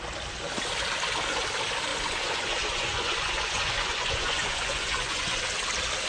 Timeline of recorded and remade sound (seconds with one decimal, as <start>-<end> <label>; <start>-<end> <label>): 0.0-1.9 recorded; 1.9-5.4 remade; 5.4-6.1 recorded

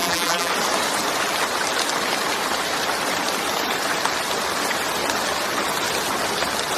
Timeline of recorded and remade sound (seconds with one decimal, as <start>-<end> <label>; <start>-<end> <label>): 0.0-0.5 remade; 0.5-6.8 recorded

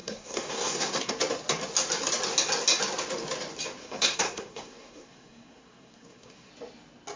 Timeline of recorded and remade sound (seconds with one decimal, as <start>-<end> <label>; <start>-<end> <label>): 0.0-1.1 remade; 1.1-3.8 recorded; 3.8-6.5 remade; 6.5-7.2 recorded

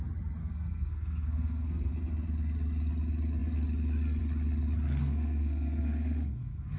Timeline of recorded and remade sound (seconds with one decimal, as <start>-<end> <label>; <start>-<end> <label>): 0.0-0.4 recorded; 0.4-1.9 remade; 1.9-5.0 recorded; 5.0-6.8 remade

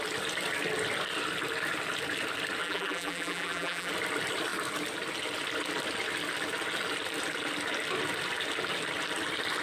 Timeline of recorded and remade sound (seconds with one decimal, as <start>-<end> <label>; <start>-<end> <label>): 0.0-2.6 recorded; 2.6-3.9 remade; 3.9-9.6 recorded